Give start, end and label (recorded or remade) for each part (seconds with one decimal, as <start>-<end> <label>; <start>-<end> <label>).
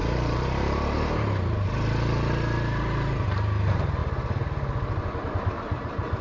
0.0-1.1 remade; 1.1-6.2 recorded